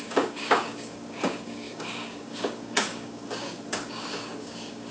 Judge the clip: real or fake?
fake